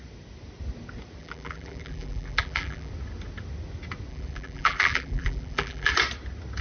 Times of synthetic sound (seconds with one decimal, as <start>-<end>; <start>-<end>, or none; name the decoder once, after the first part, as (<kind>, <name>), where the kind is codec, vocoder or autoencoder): 1.2-2.9 (vocoder, BigVGAN v2); 4.1-5.9